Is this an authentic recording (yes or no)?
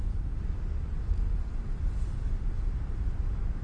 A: yes